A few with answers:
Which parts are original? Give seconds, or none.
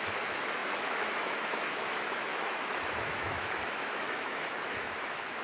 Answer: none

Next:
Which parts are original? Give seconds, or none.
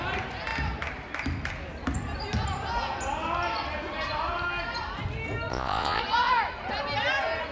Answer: 0.0-5.5; 6.0-7.5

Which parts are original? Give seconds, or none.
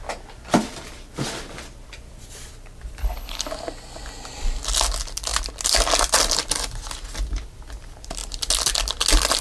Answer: 0.0-3.0; 3.5-9.4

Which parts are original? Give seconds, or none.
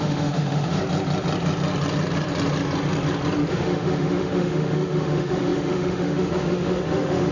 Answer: 0.8-3.5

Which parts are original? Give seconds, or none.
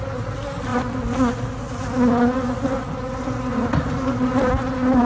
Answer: 0.0-5.0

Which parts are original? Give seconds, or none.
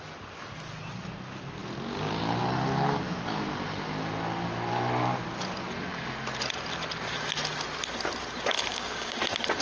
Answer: 0.0-8.7; 9.2-9.6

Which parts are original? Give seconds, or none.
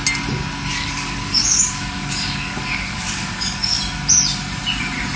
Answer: 0.0-0.7; 3.8-5.2